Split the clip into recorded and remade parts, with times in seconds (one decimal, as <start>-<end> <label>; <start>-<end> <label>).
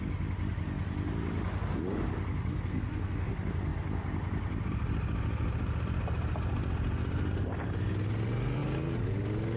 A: 0.0-2.5 recorded; 2.5-3.3 remade; 3.3-9.6 recorded